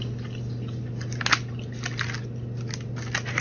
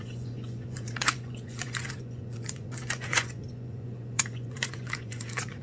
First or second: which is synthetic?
second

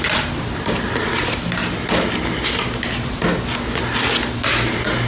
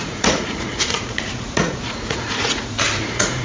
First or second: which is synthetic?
second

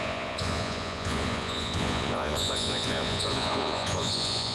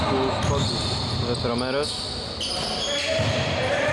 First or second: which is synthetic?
first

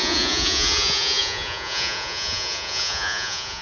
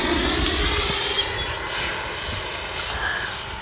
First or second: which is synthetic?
first